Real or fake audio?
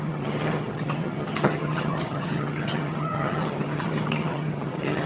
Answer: fake